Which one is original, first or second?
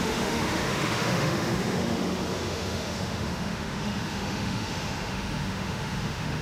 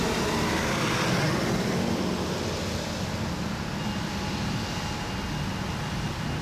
second